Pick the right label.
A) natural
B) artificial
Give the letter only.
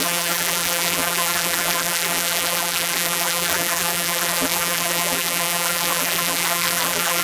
B